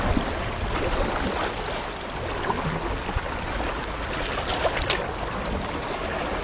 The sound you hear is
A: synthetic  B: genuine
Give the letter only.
B